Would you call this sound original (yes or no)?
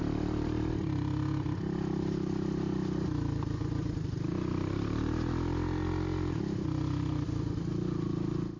yes